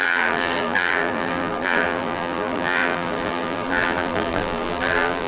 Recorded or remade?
remade